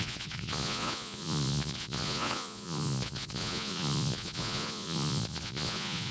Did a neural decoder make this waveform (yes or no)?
yes